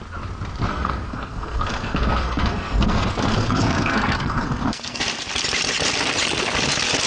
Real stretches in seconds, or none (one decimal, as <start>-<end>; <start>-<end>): 0.0-0.7; 5.0-7.1